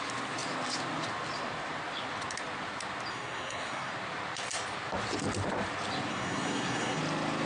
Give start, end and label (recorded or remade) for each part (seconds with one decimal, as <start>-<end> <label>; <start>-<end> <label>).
0.0-3.1 recorded; 3.1-3.9 remade; 3.9-6.1 recorded; 6.1-7.0 remade; 7.0-7.5 recorded